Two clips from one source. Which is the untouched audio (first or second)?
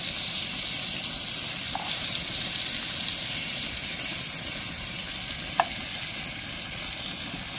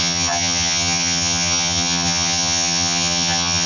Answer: first